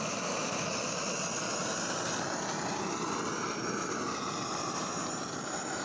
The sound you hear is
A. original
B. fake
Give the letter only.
A